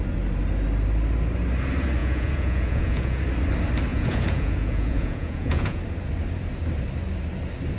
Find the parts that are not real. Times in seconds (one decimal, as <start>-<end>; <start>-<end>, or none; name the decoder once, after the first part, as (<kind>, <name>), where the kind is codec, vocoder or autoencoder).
2.0-3.2 (vocoder, Vocos); 3.9-5.8